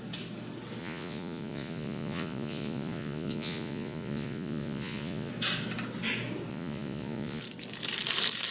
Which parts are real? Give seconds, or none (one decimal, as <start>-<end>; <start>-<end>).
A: 0.0-0.8; 5.3-6.5; 7.4-8.5